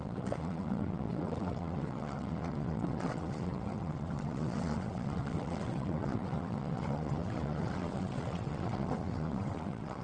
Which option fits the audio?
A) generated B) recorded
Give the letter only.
A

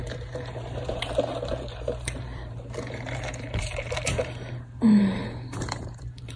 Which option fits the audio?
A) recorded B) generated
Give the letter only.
B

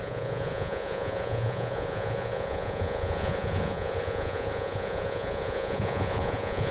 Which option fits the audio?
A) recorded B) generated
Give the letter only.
B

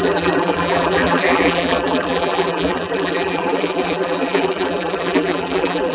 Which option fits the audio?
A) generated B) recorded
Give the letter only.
A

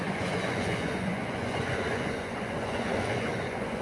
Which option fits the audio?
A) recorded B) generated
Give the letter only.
B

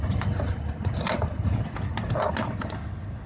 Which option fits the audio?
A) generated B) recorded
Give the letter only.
B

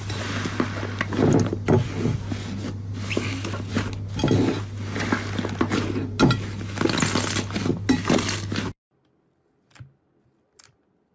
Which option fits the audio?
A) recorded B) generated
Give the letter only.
A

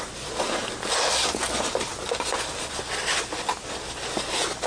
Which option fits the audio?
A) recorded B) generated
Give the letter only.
A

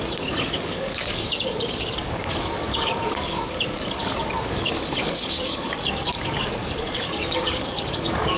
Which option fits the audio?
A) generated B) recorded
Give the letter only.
A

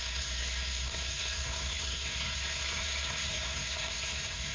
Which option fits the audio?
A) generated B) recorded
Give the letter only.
A